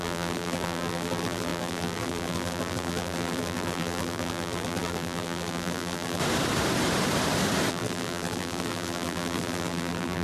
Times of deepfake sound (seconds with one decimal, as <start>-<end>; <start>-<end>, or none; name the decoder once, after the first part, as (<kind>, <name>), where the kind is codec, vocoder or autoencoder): 0.0-6.2 (vocoder, BigVGAN v2); 7.7-10.2